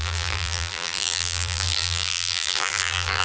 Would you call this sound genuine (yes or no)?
no